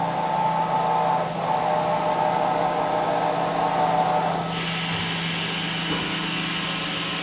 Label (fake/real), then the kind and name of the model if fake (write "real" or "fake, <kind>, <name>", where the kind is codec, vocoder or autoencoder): real